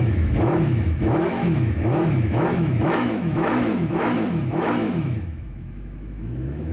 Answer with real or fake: fake